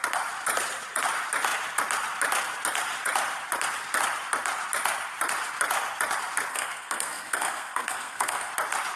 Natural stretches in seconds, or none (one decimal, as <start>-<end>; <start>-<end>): 0.0-6.5; 8.5-9.0